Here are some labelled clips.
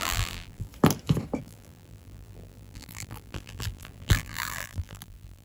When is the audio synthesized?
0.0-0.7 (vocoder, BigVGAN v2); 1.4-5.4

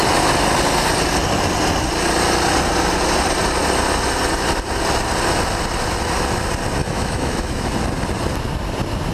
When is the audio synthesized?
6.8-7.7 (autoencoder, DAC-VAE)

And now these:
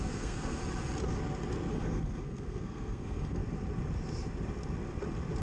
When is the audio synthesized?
0.0-0.6 (codec, SNAC); 1.7-3.4

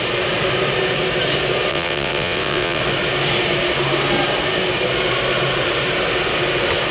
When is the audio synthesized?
1.7-2.8 (vocoder, WaveNeXt)